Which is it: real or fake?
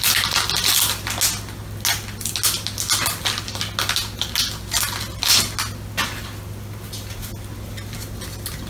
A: real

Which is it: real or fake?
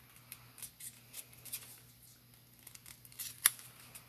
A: real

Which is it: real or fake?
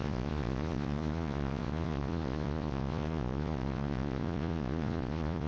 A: fake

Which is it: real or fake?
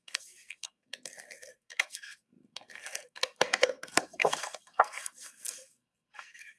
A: fake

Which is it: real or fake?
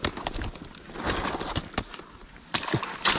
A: real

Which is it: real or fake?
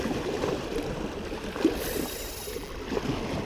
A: real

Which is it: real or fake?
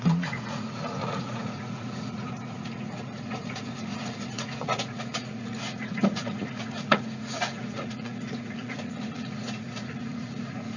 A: fake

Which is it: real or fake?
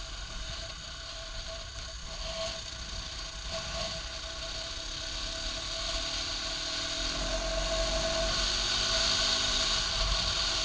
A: real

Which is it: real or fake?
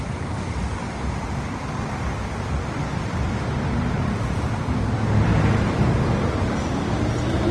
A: real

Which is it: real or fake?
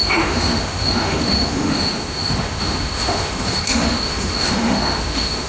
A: fake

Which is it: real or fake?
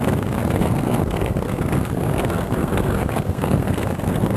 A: fake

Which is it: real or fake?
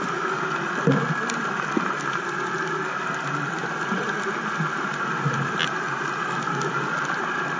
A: real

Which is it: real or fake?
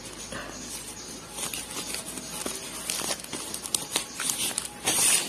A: real